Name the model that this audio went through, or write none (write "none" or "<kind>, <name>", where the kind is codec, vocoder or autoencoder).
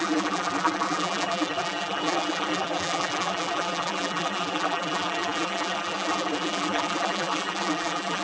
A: vocoder, BigVGAN v2